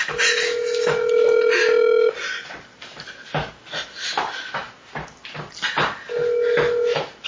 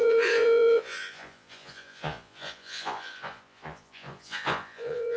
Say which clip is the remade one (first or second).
second